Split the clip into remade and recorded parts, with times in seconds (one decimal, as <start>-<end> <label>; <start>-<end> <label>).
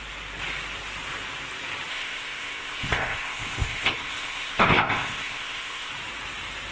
0.0-1.9 recorded; 1.9-5.9 remade; 5.9-6.7 recorded